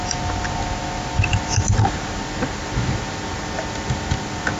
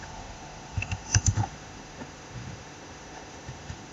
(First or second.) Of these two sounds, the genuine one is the first